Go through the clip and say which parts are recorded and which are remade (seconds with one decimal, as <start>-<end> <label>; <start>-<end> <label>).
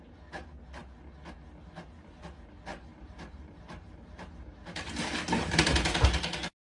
0.0-2.7 recorded; 2.7-5.6 remade; 5.6-6.6 recorded